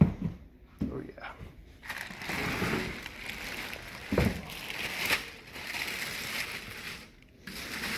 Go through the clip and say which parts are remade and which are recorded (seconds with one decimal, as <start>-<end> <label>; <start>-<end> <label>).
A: 0.0-8.0 recorded